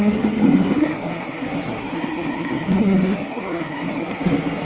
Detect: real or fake fake